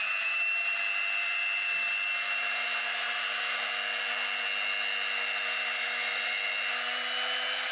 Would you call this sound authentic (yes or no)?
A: yes